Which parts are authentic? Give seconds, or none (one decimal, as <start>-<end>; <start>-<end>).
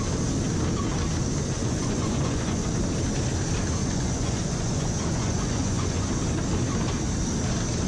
0.0-1.6; 2.7-3.8; 6.1-7.9